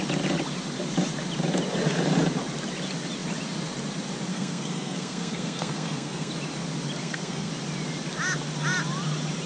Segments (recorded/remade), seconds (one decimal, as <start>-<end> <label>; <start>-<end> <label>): 0.0-4.3 recorded; 4.3-6.3 remade; 6.3-7.0 recorded; 7.0-7.5 remade; 7.5-9.5 recorded